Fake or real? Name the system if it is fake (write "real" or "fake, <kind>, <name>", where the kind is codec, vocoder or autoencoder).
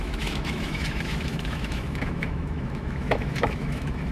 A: fake, autoencoder, DAC-VAE